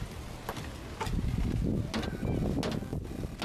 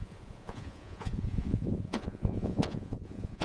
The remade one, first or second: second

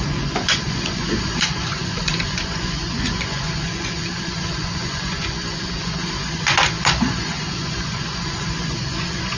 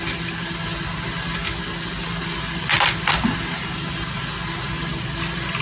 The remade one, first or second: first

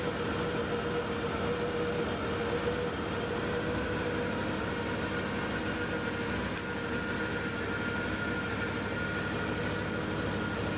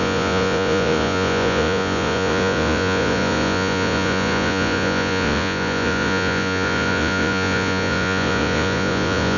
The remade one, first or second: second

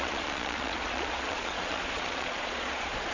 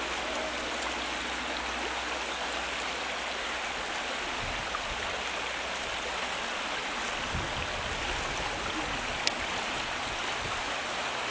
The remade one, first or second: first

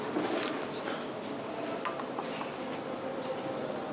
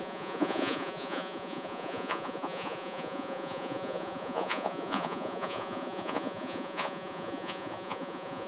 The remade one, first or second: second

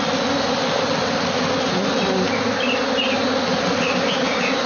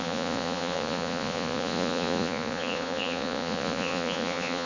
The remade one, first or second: second